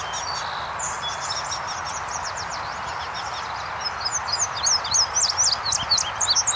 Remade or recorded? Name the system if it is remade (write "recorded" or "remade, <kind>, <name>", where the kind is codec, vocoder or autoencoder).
recorded